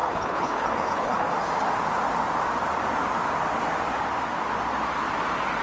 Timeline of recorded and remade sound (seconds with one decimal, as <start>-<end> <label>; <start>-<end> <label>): 0.0-1.3 remade; 1.3-5.6 recorded